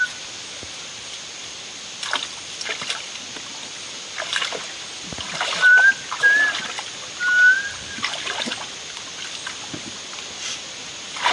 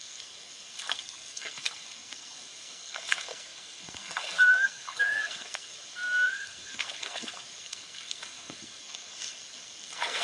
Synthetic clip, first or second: second